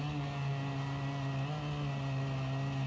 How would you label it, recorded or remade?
recorded